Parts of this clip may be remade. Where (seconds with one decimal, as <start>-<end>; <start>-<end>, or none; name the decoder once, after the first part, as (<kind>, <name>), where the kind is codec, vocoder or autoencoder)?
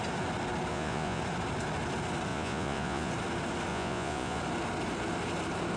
0.7-1.2 (vocoder, Vocos); 2.3-3.1; 3.7-4.4